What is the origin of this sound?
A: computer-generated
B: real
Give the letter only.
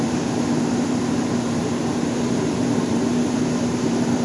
A